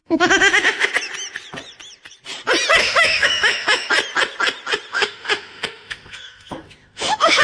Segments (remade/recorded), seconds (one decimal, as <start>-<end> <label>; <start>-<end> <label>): 0.0-0.9 remade; 0.9-2.8 recorded; 2.8-3.9 remade; 3.9-4.9 recorded; 4.9-7.4 remade